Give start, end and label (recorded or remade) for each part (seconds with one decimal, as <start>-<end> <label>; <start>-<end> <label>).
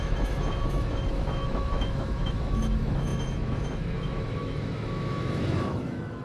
0.0-6.2 remade